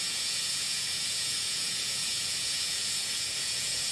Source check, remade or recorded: remade